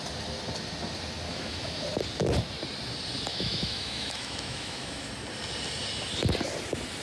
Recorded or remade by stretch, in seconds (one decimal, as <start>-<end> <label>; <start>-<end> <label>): 0.0-1.3 recorded; 1.3-1.8 remade; 1.8-3.3 recorded; 3.3-5.1 remade; 5.1-7.0 recorded